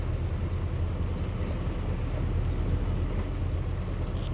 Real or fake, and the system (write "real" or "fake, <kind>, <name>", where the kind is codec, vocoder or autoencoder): real